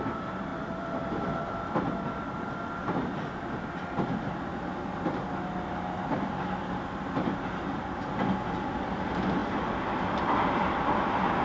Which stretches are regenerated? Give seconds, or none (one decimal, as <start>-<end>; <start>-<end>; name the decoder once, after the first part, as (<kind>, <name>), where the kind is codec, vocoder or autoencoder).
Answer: 0.0-11.4 (vocoder, BigVGAN v2)